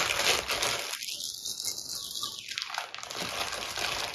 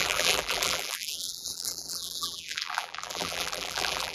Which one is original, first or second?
first